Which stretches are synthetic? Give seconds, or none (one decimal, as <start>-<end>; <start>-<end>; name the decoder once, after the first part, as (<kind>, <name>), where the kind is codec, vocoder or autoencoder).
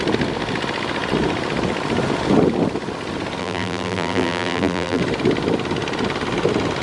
3.4-5.0 (vocoder, BigVGAN v2)